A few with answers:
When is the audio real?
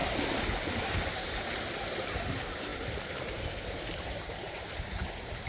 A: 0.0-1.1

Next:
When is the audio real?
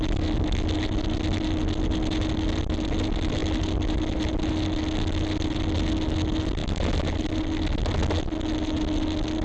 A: 0.0-9.4